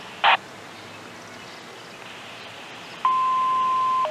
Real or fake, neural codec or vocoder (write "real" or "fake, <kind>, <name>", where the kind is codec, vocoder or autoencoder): real